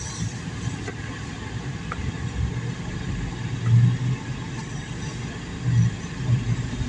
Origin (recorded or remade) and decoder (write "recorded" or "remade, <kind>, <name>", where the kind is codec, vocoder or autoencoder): recorded